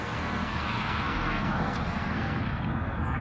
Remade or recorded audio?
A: remade